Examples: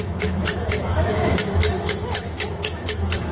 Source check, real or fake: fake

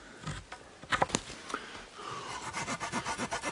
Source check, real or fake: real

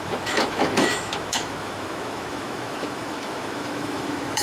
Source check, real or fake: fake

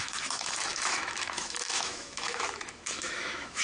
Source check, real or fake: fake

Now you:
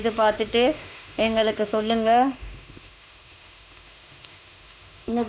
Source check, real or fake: fake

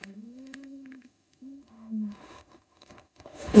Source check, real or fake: fake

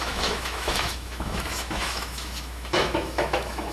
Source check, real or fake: fake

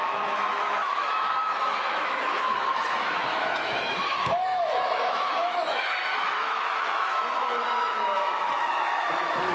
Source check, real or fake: fake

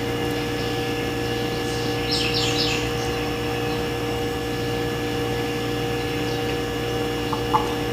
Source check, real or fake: real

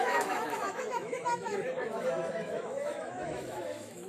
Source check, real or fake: fake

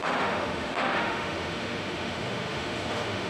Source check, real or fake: fake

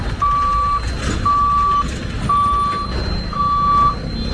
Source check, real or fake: real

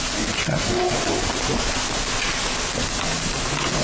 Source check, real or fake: real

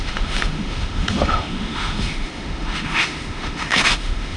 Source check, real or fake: fake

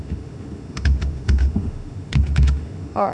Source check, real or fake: fake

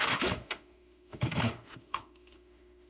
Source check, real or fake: fake